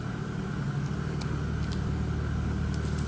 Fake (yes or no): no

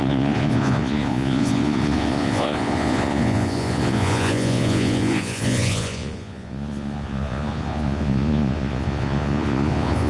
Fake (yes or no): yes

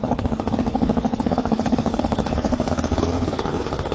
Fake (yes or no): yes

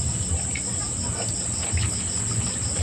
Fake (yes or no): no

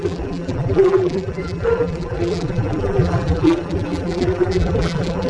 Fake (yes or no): yes